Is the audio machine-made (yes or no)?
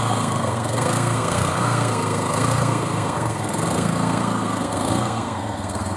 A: yes